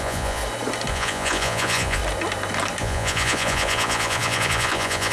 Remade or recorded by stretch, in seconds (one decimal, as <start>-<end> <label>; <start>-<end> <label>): 0.0-0.4 remade; 0.4-0.9 recorded; 0.9-2.0 remade; 2.0-2.8 recorded; 2.8-5.1 remade